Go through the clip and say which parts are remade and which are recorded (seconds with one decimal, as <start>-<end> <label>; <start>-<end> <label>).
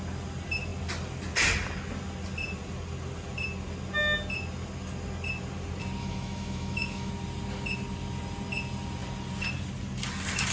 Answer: 0.0-6.0 recorded; 6.0-7.1 remade; 7.1-10.5 recorded